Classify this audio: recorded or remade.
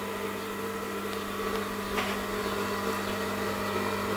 recorded